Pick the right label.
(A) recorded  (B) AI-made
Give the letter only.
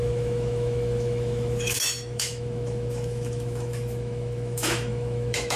B